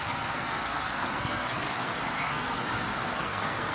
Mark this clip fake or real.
fake